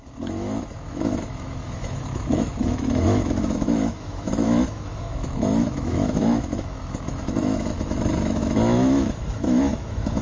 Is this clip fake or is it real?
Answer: fake